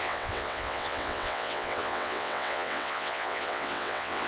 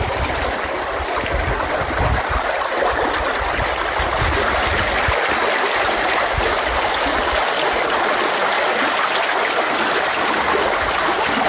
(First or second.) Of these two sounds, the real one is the second